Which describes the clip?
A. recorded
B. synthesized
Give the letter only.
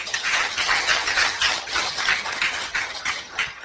B